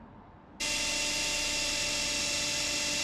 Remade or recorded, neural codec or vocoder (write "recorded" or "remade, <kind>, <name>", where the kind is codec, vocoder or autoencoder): recorded